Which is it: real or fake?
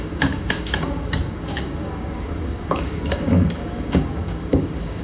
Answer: fake